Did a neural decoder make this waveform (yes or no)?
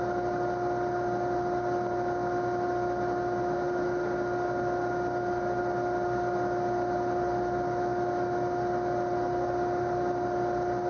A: no